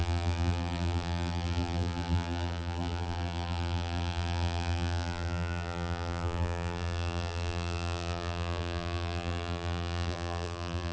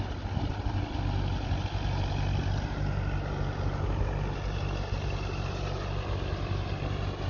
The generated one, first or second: first